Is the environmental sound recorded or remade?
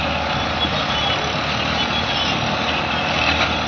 recorded